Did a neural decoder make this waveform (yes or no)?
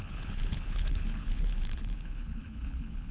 yes